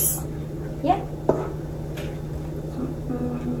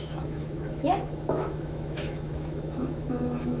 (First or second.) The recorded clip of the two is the first